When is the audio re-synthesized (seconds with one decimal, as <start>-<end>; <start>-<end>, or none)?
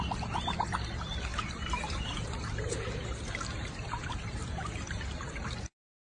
1.3-5.0